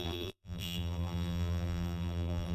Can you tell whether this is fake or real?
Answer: fake